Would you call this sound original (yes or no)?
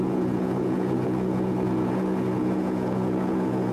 no